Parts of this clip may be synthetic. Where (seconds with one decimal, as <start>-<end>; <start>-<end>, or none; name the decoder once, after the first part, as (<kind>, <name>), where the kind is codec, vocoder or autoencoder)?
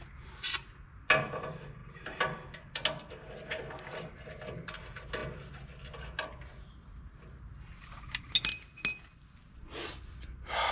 none